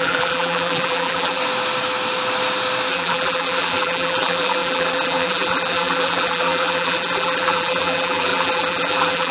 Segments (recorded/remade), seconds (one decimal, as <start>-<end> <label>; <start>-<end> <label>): 0.0-1.4 remade; 1.4-2.9 recorded; 2.9-9.3 remade